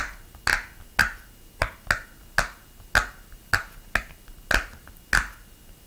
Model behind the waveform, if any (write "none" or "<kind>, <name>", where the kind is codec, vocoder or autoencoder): none